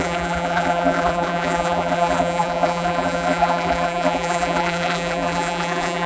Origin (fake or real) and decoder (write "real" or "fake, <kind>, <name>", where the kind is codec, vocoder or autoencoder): fake, vocoder, BigVGAN v2